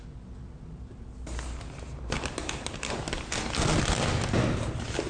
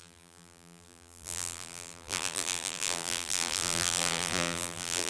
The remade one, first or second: second